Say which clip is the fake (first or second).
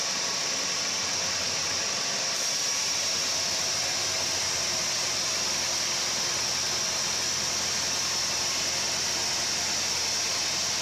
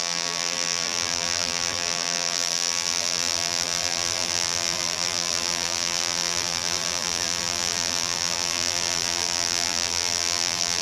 second